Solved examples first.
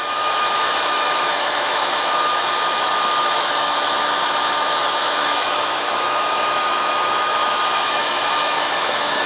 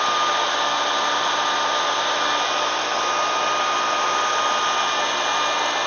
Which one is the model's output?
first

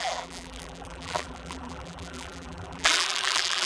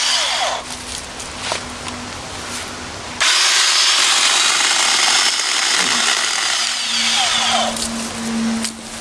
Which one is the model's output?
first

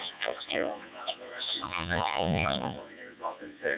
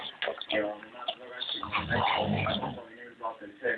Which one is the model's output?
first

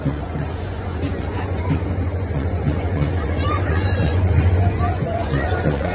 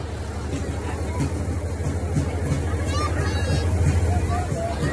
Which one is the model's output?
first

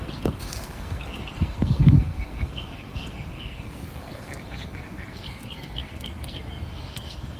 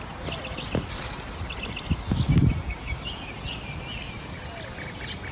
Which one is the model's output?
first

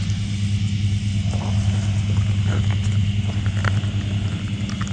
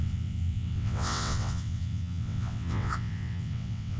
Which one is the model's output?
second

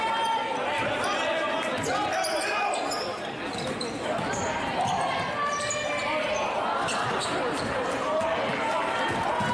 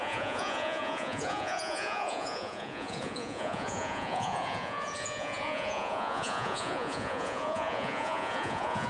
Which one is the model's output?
second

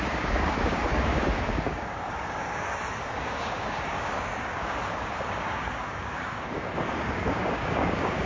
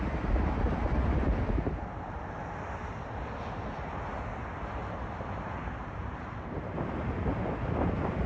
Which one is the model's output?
first